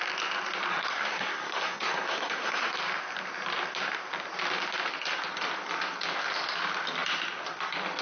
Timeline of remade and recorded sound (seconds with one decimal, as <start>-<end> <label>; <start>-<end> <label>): 0.0-0.7 recorded; 0.7-2.7 remade; 2.7-8.0 recorded